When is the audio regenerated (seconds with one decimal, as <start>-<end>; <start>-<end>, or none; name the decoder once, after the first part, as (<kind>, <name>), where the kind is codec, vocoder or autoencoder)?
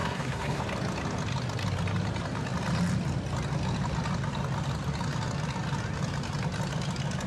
0.0-0.6 (codec, SNAC)